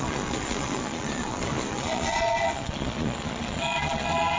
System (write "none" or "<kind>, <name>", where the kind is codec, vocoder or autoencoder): vocoder, Vocos